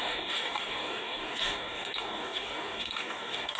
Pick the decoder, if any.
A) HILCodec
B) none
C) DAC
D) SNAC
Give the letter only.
C